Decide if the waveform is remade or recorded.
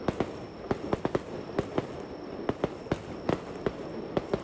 recorded